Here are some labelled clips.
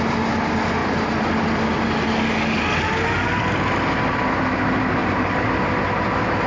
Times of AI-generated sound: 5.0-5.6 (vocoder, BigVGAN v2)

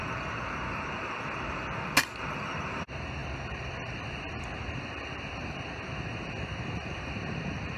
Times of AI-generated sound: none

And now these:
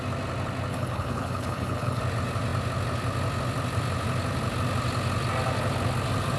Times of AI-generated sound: 0.7-2.0 (codec, HILCodec)

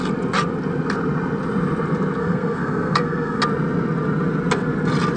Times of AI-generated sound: 2.2-3.4 (codec, SNAC)

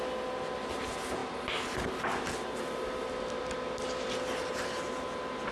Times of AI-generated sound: none

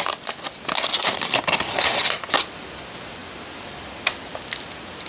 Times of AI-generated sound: none

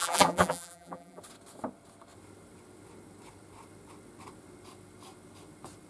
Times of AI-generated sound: 0.0-1.2 (vocoder, BigVGAN v2)

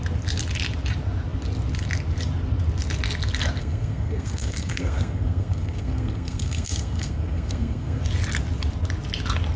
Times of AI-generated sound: 3.6-8.0 (codec, SNAC)